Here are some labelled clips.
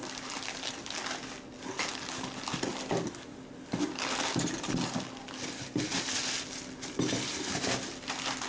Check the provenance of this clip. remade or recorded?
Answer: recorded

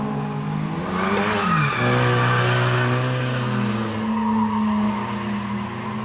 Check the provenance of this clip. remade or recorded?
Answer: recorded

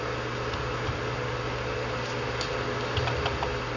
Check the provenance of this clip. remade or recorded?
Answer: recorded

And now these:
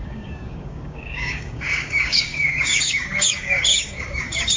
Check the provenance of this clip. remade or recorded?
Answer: remade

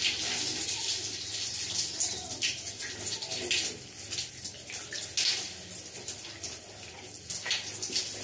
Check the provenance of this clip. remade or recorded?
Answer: recorded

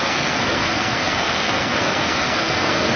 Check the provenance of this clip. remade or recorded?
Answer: remade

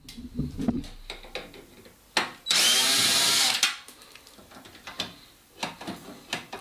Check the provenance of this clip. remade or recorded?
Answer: recorded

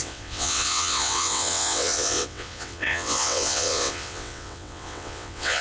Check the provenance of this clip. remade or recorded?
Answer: remade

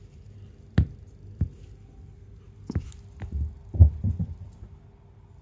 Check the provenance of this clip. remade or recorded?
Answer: recorded